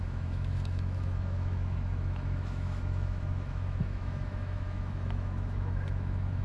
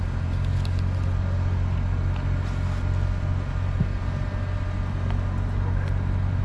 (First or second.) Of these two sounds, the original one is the second